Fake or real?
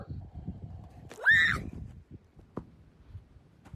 real